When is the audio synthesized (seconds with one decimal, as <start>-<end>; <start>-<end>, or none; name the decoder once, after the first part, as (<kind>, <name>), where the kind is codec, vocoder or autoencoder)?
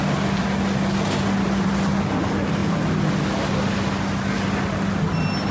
none